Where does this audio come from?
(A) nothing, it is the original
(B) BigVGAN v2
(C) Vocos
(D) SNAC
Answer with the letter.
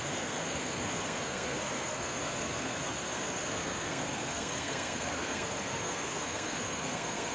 D